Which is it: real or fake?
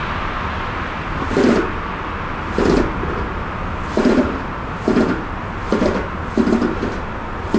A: real